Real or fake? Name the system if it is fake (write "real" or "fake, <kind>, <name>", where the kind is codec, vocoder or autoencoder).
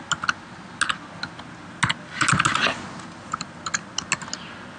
real